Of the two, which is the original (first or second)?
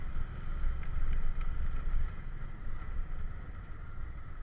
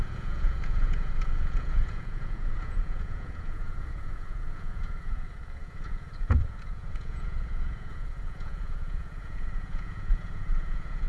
first